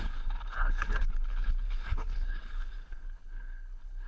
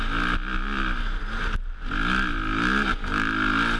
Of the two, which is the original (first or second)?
second